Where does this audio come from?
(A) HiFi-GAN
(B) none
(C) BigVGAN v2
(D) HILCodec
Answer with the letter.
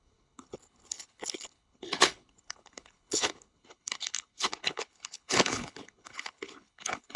D